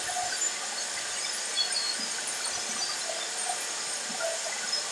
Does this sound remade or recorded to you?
recorded